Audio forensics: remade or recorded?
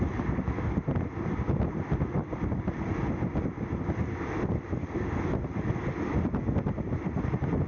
recorded